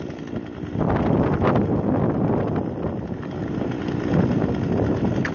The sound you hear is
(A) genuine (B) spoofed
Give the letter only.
A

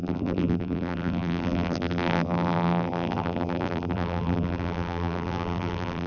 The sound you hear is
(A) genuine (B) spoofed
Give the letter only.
B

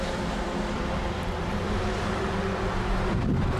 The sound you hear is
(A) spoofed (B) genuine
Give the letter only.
A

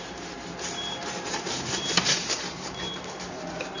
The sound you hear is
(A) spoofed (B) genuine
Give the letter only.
A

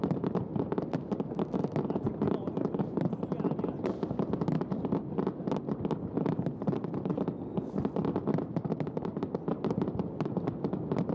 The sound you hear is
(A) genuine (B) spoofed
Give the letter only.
A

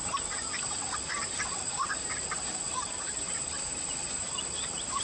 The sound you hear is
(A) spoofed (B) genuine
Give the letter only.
A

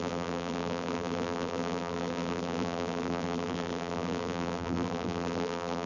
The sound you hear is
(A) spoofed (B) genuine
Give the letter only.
A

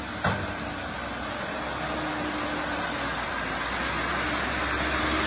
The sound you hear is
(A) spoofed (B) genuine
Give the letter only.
B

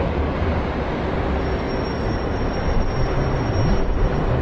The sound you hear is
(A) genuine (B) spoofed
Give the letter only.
A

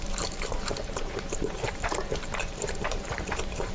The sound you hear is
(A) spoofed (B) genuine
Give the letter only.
A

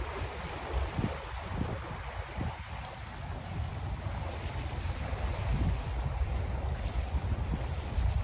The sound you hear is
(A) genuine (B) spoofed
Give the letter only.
B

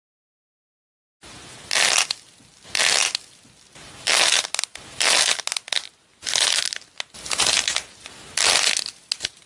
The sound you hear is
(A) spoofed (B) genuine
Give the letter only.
B